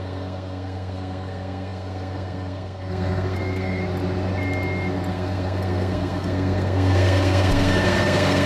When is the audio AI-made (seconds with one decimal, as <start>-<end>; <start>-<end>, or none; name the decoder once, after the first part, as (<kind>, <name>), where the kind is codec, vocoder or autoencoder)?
0.0-3.8 (codec, SNAC); 5.1-8.5